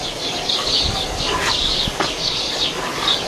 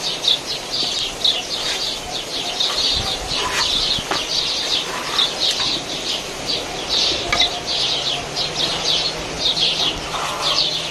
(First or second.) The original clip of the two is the second